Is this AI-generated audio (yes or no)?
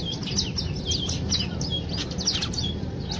no